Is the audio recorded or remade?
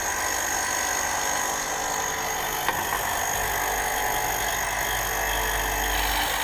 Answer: recorded